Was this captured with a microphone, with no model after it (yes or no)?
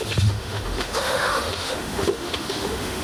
no